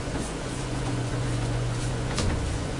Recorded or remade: remade